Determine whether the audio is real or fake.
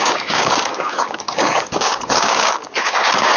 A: fake